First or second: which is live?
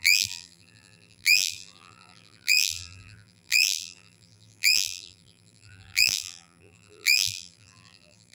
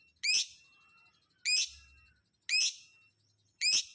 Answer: second